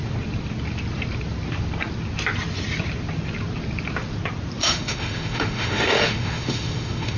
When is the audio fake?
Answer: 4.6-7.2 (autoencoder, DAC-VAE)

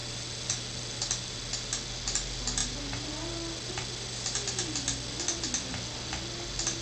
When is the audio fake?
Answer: none

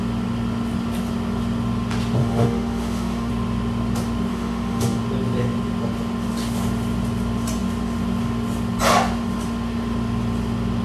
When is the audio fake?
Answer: 2.2-3.3 (autoencoder, DAC-VAE); 4.3-5.0

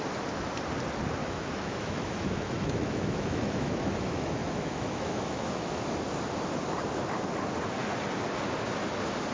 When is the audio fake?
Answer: 1.2-5.8 (autoencoder, DAC-VAE)

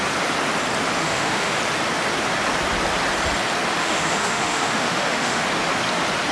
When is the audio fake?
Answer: 1.0-1.6 (autoencoder, DAC-VAE); 3.8-5.4

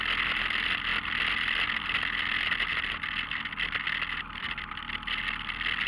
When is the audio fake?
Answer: none

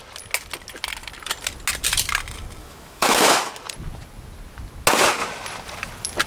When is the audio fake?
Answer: 2.6-3.5 (autoencoder, DAC-VAE)

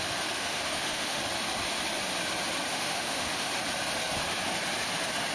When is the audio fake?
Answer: 0.4-1.2 (autoencoder, DAC-VAE); 2.7-3.5